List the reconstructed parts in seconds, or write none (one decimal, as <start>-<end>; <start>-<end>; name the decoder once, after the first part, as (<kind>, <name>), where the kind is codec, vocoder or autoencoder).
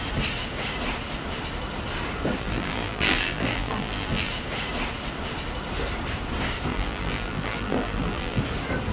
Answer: 2.4-4.3 (vocoder, BigVGAN v2); 6.7-8.4